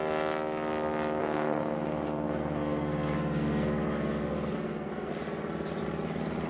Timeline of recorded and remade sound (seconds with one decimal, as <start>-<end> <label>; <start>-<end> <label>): 0.0-1.2 recorded; 1.2-5.1 remade; 5.1-6.5 recorded